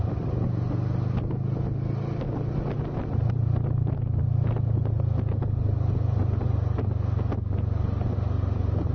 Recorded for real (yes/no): yes